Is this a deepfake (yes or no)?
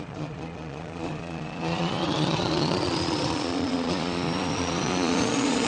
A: yes